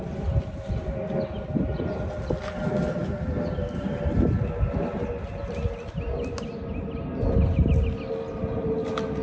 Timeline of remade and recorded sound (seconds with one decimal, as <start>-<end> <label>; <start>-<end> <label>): 0.0-9.2 recorded